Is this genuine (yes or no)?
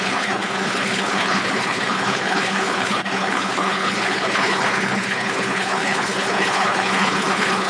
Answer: no